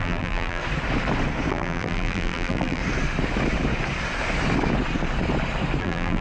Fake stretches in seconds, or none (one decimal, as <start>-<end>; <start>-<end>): 0.0-0.6; 1.5-2.8; 5.8-6.2